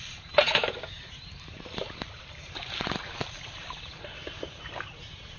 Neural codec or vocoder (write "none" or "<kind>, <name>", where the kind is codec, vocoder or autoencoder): vocoder, BigVGAN v2